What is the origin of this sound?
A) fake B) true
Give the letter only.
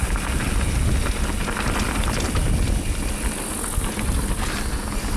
B